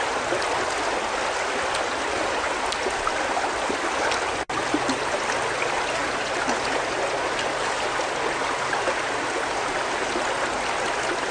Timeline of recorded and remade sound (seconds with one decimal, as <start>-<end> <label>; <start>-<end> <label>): 0.0-11.3 recorded